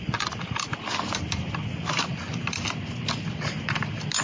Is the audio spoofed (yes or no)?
no